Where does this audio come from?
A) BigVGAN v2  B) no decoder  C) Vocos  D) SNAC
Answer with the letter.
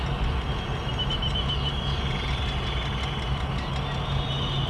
B